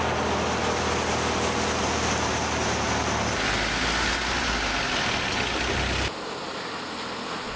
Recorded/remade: recorded